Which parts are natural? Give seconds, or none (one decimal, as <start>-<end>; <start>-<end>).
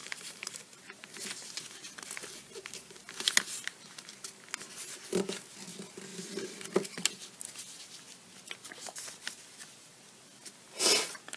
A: 0.7-11.4